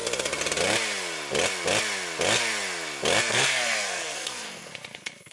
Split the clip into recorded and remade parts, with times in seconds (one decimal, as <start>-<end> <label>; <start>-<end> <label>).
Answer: 0.0-3.2 recorded; 3.2-5.3 remade